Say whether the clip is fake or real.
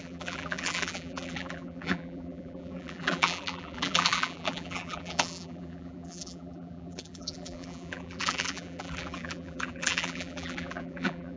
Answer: fake